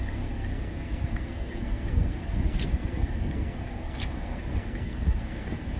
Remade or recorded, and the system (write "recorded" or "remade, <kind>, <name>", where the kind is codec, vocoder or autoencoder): remade, codec, SNAC